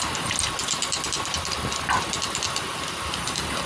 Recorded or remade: recorded